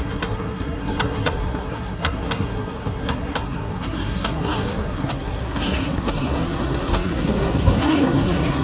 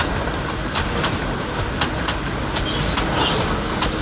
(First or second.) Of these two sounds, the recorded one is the second